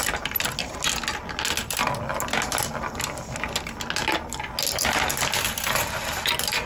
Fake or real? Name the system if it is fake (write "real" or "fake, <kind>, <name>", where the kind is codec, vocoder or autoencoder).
real